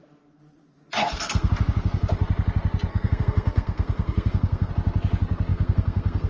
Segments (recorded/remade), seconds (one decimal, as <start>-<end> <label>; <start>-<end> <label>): 0.0-1.0 recorded; 1.0-1.5 remade; 1.5-2.9 recorded; 2.9-4.7 remade; 4.7-5.5 recorded; 5.5-6.3 remade